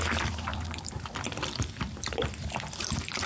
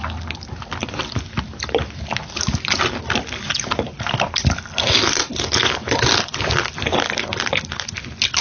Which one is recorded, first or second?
second